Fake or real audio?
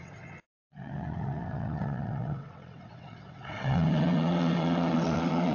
fake